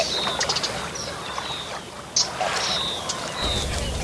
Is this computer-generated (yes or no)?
no